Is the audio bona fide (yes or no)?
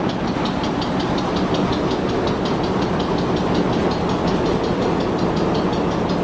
yes